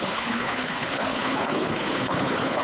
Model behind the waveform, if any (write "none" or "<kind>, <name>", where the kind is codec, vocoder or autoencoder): codec, HILCodec